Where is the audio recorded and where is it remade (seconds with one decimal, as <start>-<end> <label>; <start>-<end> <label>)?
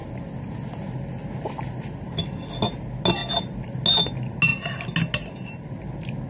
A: 0.0-6.3 recorded